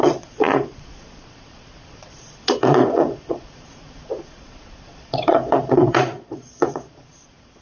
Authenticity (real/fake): fake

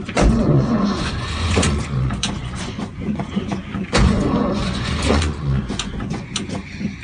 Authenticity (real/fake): fake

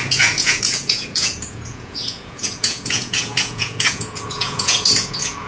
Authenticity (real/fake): fake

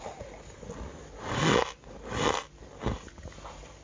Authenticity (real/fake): real